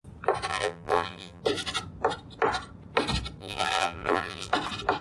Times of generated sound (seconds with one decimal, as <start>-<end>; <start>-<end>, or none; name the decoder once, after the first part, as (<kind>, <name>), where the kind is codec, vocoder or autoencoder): 0.5-1.4 (vocoder, BigVGAN v2); 3.4-4.5